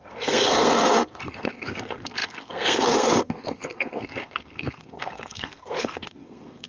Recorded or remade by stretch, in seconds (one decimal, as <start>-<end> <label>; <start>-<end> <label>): 0.0-6.7 remade